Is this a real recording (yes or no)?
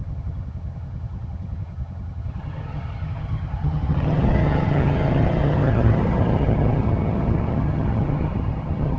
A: no